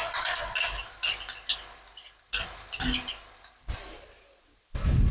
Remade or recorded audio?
recorded